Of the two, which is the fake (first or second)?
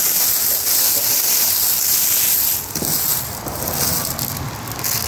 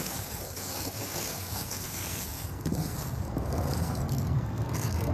second